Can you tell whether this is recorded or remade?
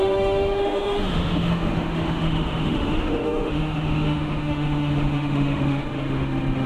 remade